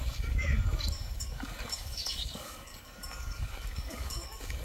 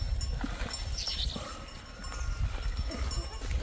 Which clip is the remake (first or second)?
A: first